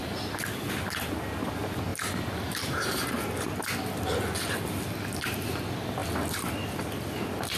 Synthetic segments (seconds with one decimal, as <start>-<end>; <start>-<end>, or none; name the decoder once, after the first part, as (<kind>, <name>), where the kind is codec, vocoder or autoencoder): 1.9-3.1 (vocoder, BigVGAN v2)